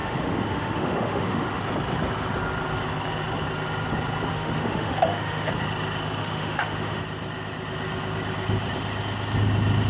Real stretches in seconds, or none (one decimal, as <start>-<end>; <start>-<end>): 1.6-4.3; 5.5-6.2; 7.0-9.9